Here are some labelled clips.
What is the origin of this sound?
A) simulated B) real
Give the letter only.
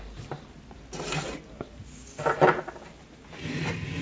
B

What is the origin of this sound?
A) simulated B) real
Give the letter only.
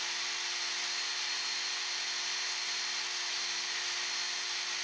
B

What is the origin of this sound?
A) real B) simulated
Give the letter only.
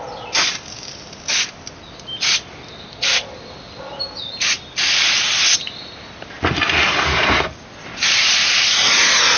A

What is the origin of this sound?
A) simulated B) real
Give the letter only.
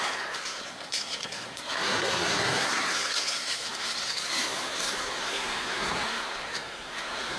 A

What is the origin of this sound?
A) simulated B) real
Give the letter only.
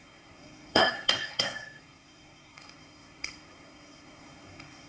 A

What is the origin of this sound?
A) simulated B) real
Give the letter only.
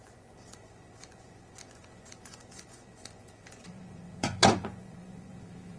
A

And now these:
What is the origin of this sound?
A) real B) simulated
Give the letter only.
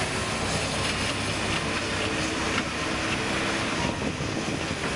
A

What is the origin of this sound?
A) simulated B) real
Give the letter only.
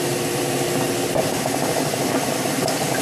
B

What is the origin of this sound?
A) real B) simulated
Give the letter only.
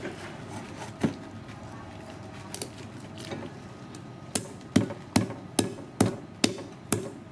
A